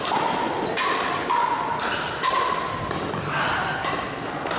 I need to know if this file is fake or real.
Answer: real